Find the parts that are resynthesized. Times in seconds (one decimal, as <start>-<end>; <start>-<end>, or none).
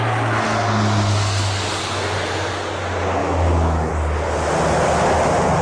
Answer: 3.2-3.9